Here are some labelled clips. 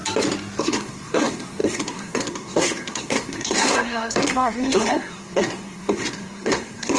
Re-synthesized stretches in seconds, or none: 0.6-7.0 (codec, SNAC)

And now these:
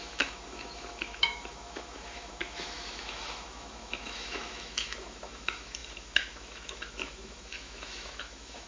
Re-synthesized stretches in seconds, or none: 0.0-8.7 (autoencoder, DAC-VAE)

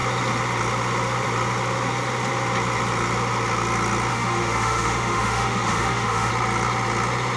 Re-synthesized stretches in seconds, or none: 4.1-6.3 (autoencoder, DAC-VAE)

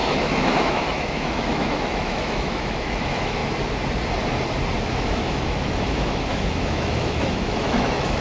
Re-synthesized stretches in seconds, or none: 0.0-3.4 (autoencoder, DAC-VAE); 4.9-8.2

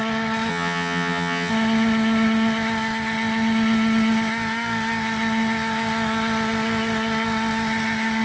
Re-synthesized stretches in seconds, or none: 0.5-1.5 (vocoder, HiFi-GAN)

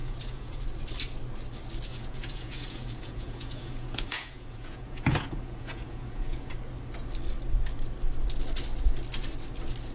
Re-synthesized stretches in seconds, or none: 0.0-0.6 (vocoder, Vocos); 1.9-6.5